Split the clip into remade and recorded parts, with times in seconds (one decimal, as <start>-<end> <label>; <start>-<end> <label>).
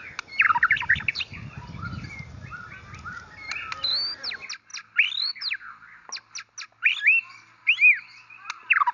0.0-8.9 recorded